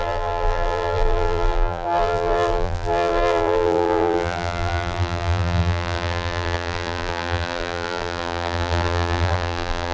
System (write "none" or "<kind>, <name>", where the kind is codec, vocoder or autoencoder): vocoder, BigVGAN v2